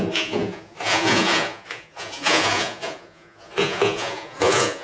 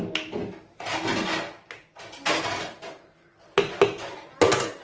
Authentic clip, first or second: second